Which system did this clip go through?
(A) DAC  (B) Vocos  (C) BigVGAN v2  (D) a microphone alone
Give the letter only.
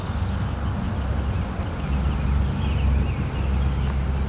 D